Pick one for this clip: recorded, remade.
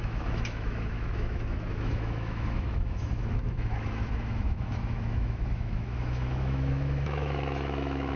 remade